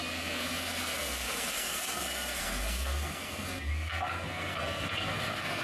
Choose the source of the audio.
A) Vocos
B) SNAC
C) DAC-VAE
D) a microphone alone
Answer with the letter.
B